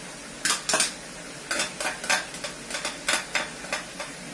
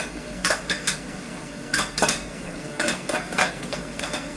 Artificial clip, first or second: second